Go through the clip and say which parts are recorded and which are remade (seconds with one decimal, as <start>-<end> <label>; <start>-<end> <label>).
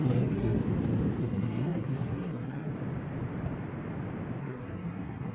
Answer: 0.0-0.6 remade; 0.6-1.2 recorded; 1.2-2.7 remade; 2.7-4.4 recorded; 4.4-5.3 remade